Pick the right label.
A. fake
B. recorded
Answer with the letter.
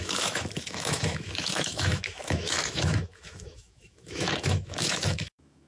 A